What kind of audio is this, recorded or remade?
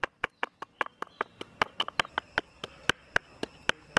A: recorded